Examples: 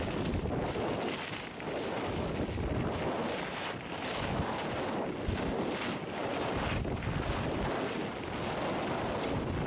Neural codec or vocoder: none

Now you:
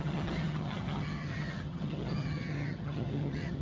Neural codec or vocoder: vocoder, HiFi-GAN